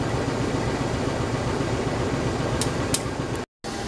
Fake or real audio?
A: real